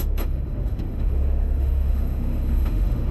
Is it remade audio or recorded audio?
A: remade